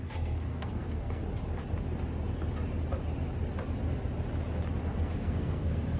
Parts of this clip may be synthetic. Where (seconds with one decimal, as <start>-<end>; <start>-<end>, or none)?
0.0-1.2; 4.8-6.0